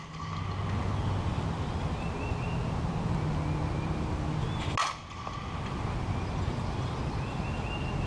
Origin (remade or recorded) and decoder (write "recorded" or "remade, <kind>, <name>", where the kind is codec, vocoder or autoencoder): recorded